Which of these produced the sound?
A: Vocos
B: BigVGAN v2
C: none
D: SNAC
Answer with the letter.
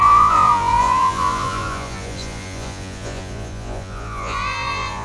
A